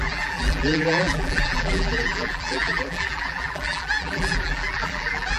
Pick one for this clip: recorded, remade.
remade